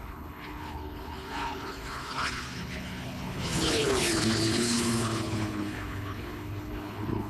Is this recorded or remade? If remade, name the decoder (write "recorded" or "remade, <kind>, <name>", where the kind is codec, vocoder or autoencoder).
remade, codec, HILCodec